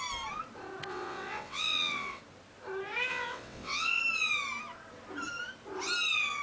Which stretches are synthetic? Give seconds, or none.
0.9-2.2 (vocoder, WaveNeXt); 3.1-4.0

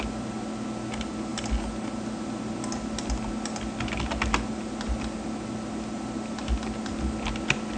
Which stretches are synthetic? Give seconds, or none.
none

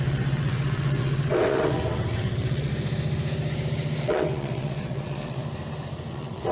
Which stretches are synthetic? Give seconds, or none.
0.0-2.7 (vocoder, WaveNeXt); 4.0-5.4; 6.1-6.5

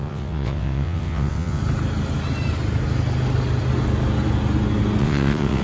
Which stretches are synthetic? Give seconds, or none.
0.0-1.6 (vocoder, WaveNeXt); 5.0-5.6

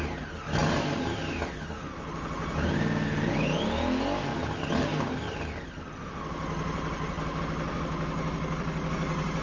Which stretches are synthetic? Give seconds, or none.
none

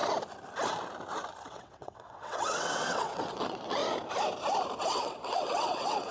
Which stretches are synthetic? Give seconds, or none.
1.5-3.8 (vocoder, WaveNeXt); 4.9-6.1

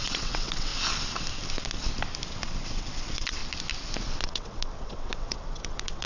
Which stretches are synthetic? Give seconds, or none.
0.0-0.7 (vocoder, WaveNeXt); 2.3-3.4; 4.2-6.1